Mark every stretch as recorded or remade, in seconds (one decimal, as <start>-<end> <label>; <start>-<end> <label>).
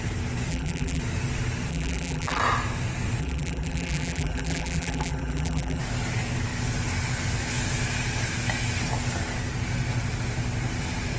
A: 0.0-0.5 recorded; 0.5-1.0 remade; 1.0-1.7 recorded; 1.7-2.4 remade; 2.4-3.2 recorded; 3.2-5.8 remade; 5.8-11.2 recorded